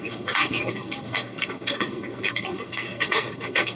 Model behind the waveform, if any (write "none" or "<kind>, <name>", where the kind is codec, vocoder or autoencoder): codec, SNAC